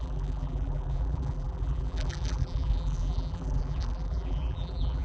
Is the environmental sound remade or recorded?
remade